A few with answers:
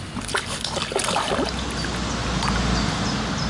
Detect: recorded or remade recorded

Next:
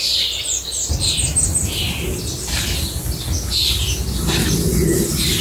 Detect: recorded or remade recorded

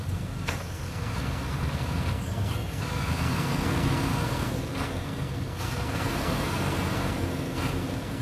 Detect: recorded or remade remade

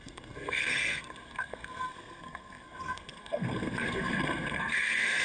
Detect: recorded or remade remade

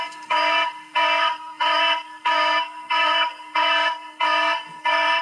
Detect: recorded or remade remade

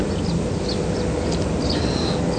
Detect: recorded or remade recorded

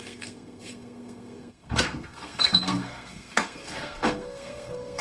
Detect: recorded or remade remade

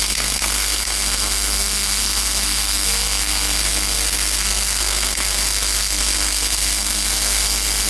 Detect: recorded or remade remade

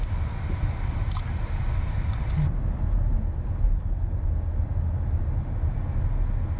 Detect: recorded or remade recorded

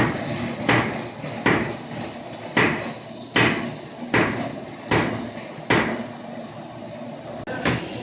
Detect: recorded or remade recorded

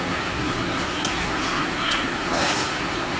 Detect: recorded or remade remade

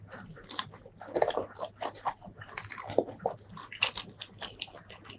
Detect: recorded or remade recorded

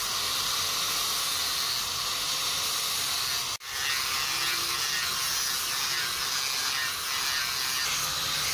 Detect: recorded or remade recorded